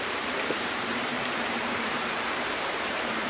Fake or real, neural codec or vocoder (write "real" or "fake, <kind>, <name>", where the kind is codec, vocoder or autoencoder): fake, vocoder, BigVGAN v2